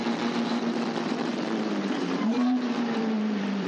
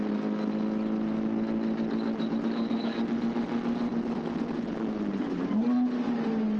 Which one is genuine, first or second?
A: second